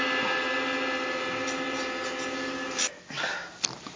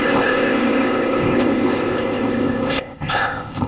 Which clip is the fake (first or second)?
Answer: second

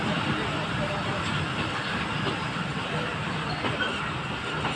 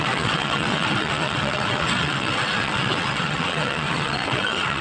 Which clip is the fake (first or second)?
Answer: second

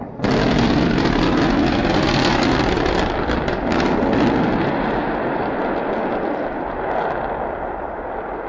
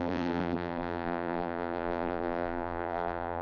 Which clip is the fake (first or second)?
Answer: second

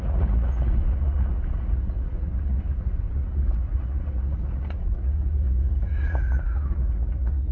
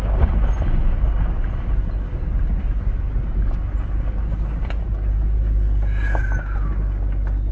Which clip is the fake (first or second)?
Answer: first